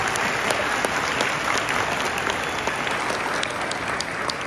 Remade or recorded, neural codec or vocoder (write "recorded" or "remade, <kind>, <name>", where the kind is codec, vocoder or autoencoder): recorded